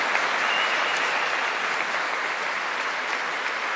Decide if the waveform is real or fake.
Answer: real